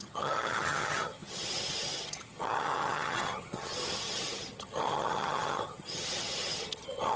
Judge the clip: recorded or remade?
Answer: remade